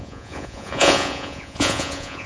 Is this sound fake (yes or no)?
yes